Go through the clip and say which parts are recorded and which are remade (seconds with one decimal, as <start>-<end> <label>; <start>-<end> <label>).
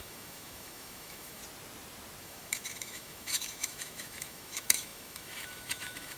0.0-1.4 remade; 1.4-2.2 recorded; 2.2-6.2 remade